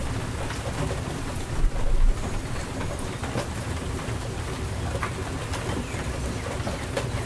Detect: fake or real real